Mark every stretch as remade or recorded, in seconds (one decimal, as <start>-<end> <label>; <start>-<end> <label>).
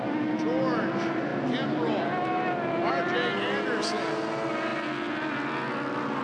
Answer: 0.0-6.2 recorded